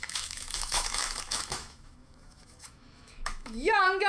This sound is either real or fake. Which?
fake